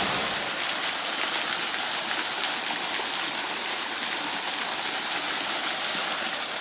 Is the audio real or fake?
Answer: real